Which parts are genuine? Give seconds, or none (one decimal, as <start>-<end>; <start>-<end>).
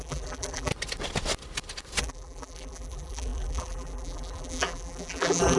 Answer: 0.7-2.0